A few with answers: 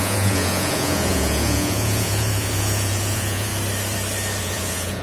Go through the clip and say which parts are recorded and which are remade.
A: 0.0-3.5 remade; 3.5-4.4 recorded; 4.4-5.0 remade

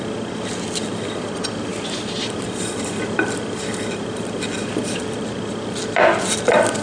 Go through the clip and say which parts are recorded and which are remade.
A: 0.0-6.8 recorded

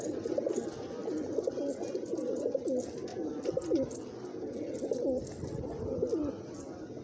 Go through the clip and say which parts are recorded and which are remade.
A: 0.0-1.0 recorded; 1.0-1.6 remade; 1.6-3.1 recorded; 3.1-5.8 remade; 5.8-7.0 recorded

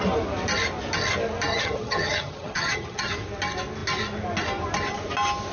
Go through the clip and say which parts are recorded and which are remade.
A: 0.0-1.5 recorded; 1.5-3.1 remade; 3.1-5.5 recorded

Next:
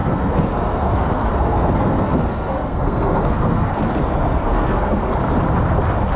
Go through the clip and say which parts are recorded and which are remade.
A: 0.0-3.7 remade; 3.7-4.3 recorded; 4.3-5.1 remade; 5.1-6.2 recorded

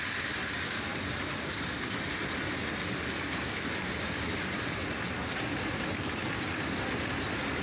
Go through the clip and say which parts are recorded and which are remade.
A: 0.0-0.9 recorded; 0.9-1.9 remade; 1.9-2.8 recorded; 2.8-4.8 remade; 4.8-7.6 recorded

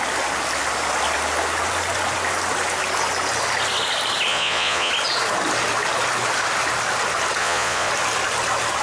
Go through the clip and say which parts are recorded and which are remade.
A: 0.0-4.3 recorded; 4.3-4.9 remade; 4.9-7.4 recorded; 7.4-7.9 remade; 7.9-8.8 recorded